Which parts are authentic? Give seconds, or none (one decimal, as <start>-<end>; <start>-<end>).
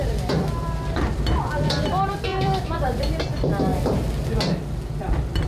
1.0-2.3; 3.0-5.5